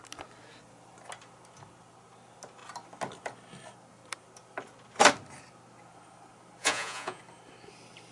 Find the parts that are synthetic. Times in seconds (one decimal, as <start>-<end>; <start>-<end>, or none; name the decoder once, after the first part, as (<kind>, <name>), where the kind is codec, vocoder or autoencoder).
6.6-7.2 (vocoder, Vocos)